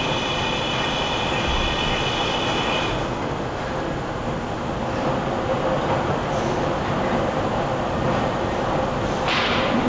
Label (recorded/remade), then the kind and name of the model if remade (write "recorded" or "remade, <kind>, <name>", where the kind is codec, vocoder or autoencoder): recorded